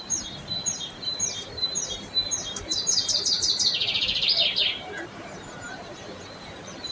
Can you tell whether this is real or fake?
fake